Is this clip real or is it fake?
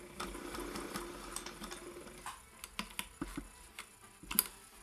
real